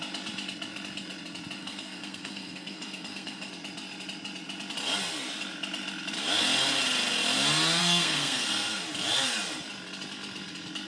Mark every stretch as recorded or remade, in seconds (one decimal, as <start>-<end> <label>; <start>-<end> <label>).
0.0-1.6 recorded; 1.6-3.5 remade; 3.5-7.8 recorded; 7.8-8.8 remade; 8.8-10.9 recorded